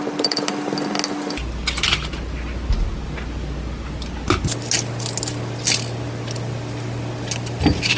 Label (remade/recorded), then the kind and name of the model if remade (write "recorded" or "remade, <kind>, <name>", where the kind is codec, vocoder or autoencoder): recorded